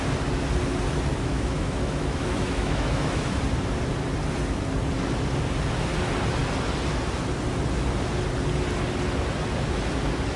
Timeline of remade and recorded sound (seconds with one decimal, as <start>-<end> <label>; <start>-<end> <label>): 0.0-1.1 recorded; 1.1-3.4 remade; 3.4-10.4 recorded